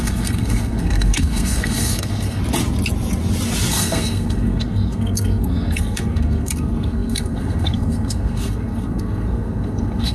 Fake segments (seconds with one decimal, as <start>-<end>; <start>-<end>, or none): 0.0-2.4; 3.7-10.1